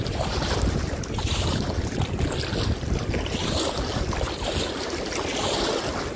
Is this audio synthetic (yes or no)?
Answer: no